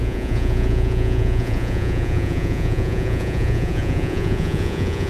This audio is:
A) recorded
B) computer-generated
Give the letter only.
B